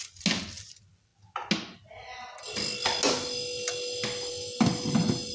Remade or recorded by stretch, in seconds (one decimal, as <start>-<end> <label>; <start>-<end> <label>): 0.0-5.3 recorded